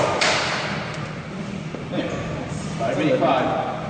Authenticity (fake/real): fake